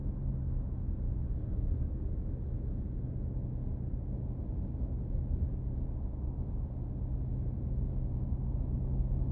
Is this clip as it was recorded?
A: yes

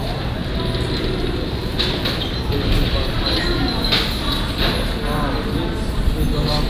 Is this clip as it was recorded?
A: yes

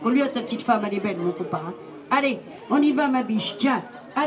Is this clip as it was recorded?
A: yes